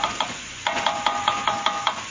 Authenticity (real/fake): fake